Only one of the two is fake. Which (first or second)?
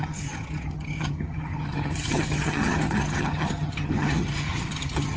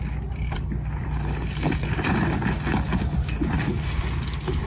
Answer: first